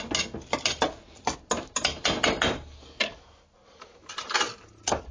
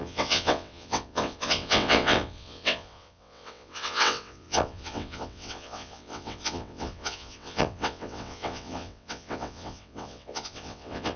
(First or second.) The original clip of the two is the first